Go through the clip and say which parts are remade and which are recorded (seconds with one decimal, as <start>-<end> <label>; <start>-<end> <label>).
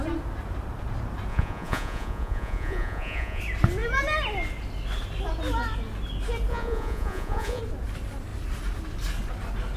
0.0-1.3 recorded; 1.3-3.4 remade; 3.4-6.5 recorded; 6.5-7.6 remade; 7.6-9.8 recorded